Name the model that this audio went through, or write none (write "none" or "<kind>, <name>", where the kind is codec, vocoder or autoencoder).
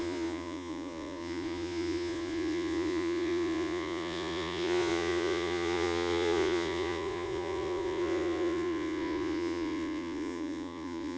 vocoder, Vocos